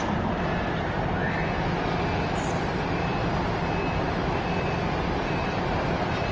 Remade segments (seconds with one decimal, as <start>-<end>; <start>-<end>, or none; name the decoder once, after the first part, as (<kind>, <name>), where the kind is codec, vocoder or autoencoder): 0.0-1.2 (vocoder, BigVGAN v2); 4.5-6.3